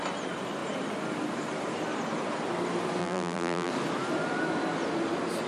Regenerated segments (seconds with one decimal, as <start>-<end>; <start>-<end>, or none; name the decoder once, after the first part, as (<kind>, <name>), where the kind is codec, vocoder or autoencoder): 3.0-3.7 (vocoder, BigVGAN v2)